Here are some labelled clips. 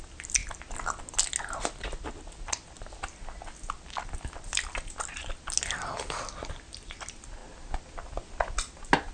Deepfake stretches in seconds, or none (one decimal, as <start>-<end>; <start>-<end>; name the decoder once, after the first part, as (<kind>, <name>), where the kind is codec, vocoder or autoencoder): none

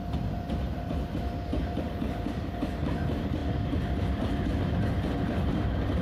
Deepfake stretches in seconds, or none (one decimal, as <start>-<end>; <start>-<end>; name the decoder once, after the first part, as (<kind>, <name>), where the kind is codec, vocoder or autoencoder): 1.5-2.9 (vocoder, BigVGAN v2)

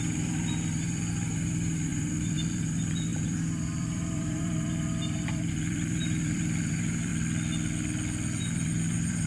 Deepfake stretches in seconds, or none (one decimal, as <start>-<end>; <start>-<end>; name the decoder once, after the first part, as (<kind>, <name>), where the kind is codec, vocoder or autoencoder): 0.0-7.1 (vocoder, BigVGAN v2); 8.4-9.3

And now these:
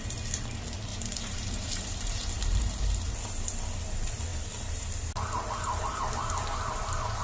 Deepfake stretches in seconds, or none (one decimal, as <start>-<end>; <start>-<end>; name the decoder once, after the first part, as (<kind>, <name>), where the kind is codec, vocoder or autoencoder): 0.9-2.8 (vocoder, BigVGAN v2)

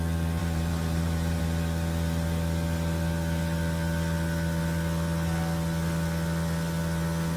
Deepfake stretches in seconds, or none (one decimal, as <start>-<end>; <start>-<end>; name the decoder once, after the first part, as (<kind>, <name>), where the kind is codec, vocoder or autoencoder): 0.4-1.4 (vocoder, BigVGAN v2)

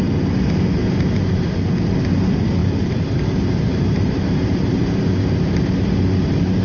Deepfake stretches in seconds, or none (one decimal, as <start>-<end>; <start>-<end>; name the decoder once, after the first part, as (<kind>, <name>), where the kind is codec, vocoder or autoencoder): 0.8-1.5 (vocoder, BigVGAN v2); 2.6-3.2; 3.7-5.0

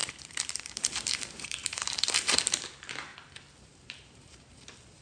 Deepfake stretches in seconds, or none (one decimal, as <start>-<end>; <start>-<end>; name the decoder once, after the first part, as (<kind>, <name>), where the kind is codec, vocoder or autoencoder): 0.0-3.1 (vocoder, BigVGAN v2); 3.6-5.0

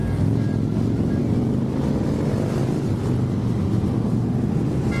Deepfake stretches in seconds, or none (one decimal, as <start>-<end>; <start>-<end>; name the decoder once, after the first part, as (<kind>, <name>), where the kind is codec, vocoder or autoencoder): none